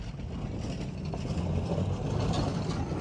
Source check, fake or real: real